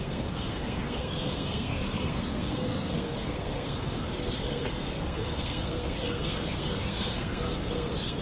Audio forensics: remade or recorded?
remade